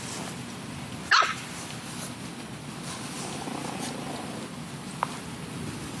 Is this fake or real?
real